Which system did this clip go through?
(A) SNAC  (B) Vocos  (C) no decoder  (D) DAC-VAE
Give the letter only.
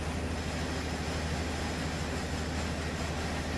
C